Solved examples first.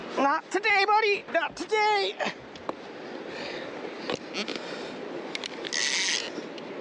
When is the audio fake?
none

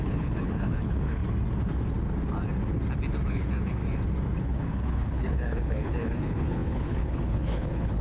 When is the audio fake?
0.0-1.2; 3.3-3.8; 4.4-8.0

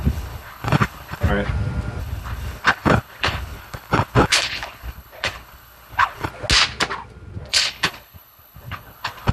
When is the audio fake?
0.0-1.3; 2.0-6.3; 7.5-9.3

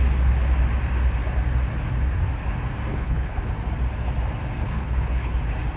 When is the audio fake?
2.9-3.5; 4.6-5.3

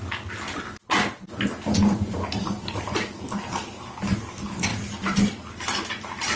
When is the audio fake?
none

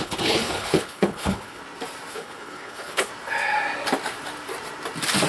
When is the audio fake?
0.0-1.6; 2.1-3.1

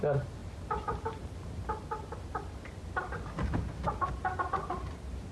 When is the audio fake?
none

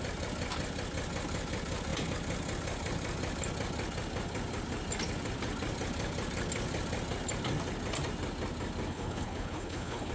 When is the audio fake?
8.9-10.1